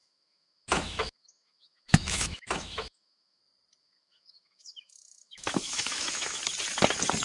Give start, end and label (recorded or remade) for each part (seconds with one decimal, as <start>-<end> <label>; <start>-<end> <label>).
0.0-3.4 remade; 3.4-3.8 recorded; 3.8-6.4 remade; 6.4-7.2 recorded